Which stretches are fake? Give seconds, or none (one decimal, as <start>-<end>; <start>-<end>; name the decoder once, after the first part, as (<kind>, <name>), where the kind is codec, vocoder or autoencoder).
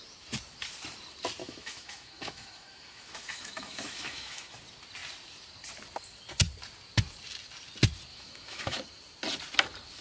1.4-4.6 (autoencoder, DAC-VAE); 8.1-8.8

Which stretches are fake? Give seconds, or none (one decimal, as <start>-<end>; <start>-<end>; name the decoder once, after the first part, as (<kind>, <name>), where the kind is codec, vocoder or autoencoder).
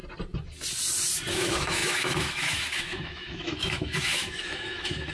1.3-5.1 (autoencoder, DAC-VAE)